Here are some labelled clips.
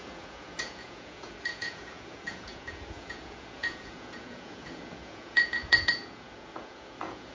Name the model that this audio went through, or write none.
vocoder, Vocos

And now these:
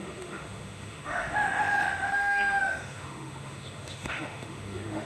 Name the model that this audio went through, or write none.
autoencoder, DAC-VAE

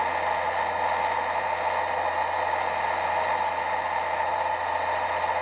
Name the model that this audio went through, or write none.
none